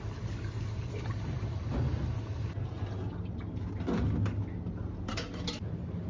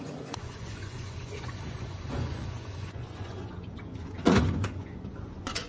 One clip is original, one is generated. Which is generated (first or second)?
second